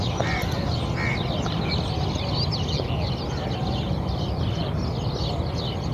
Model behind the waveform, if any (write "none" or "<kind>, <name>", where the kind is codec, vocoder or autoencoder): none